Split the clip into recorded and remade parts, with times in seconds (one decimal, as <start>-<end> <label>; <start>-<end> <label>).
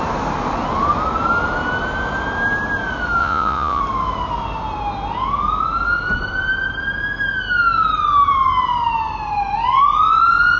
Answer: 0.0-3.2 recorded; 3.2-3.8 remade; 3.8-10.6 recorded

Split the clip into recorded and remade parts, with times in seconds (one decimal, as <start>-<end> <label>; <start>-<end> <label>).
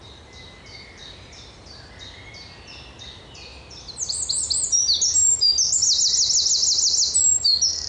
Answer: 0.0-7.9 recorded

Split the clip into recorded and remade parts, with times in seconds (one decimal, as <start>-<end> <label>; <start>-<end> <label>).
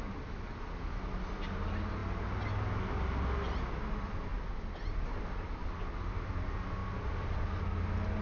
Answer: 0.0-8.2 recorded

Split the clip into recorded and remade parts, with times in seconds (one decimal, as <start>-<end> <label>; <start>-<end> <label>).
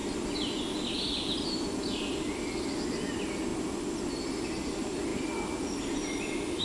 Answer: 0.0-6.6 recorded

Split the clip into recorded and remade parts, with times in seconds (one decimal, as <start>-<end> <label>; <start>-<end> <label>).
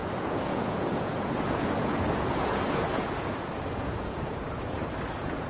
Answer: 0.0-5.5 remade